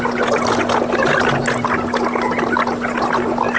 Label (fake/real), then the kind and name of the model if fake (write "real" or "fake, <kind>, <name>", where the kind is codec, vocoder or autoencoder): real